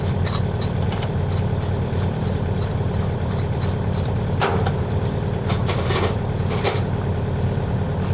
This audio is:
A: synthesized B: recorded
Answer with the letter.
A